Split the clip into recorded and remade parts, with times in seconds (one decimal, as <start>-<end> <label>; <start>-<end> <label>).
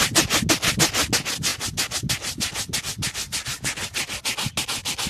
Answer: 0.0-5.1 recorded